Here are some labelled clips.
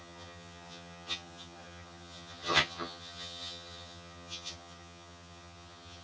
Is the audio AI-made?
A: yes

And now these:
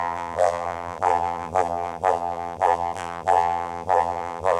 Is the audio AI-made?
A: yes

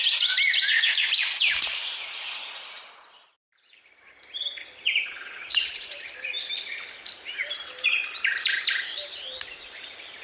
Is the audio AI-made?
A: yes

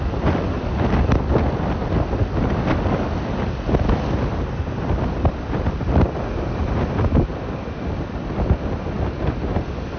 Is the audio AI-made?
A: no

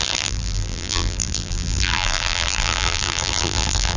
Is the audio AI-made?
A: yes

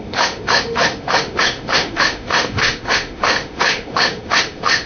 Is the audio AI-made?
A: yes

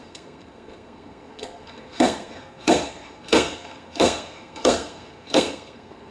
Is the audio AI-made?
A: yes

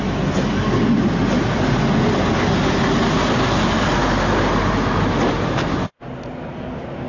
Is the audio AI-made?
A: no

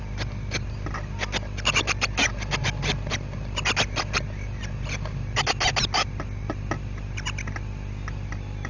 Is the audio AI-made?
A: no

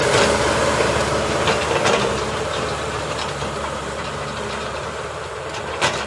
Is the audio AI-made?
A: yes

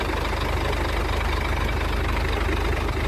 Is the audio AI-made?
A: no